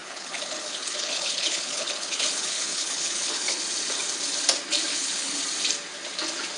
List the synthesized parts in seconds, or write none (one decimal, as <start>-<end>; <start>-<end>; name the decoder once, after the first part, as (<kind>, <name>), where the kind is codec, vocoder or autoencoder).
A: 0.0-3.6 (codec, HILCodec); 4.9-5.4